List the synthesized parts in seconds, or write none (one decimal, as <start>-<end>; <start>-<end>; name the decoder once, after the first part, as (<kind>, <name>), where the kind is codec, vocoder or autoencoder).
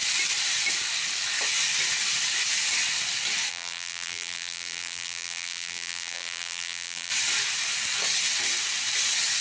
3.5-7.1 (vocoder, BigVGAN v2)